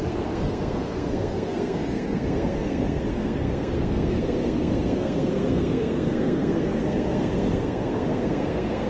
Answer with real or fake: fake